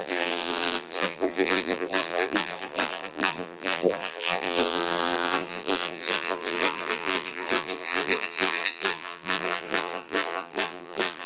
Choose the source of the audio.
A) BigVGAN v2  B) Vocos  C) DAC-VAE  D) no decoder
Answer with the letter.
A